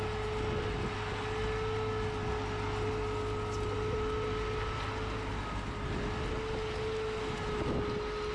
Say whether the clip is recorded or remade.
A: recorded